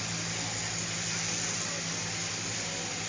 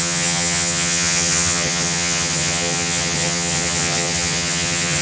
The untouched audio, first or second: first